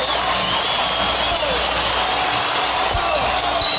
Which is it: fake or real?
real